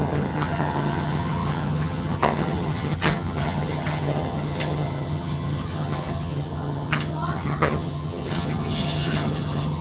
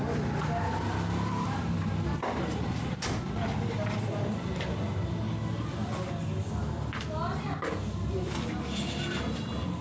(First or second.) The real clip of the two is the second